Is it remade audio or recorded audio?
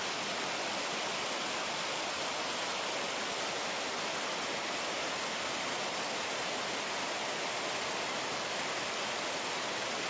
recorded